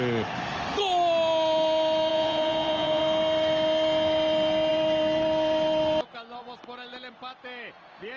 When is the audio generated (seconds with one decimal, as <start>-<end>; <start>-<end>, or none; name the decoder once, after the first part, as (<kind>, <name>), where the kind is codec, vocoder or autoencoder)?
2.1-3.0 (vocoder, Vocos)